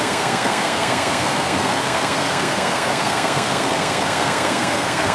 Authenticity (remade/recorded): remade